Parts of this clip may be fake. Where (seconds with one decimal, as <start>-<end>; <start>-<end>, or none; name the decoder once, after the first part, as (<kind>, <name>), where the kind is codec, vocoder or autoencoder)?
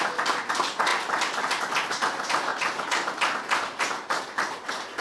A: none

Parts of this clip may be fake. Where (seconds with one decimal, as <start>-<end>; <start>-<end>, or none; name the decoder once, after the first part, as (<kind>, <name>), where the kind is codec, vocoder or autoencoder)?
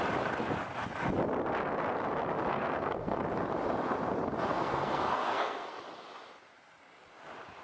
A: 2.5-3.2 (codec, SNAC); 4.5-5.8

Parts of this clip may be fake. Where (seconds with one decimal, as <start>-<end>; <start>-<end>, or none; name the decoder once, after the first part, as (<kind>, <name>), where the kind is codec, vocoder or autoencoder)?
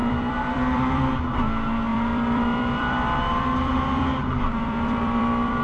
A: 0.0-1.2 (vocoder, BigVGAN v2); 1.9-5.6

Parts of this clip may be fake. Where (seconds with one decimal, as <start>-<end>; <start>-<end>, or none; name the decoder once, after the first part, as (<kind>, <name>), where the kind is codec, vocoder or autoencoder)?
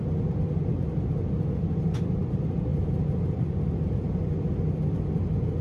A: 2.7-3.5 (vocoder, BigVGAN v2)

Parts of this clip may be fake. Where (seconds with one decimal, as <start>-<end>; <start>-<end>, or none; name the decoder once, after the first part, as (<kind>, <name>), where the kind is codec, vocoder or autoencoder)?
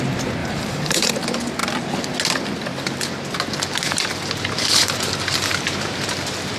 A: 0.4-1.1 (vocoder, BigVGAN v2)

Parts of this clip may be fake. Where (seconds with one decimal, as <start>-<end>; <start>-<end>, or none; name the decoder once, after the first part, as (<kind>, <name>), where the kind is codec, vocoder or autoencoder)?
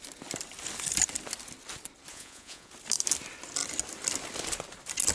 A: 2.1-2.7 (vocoder, Vocos)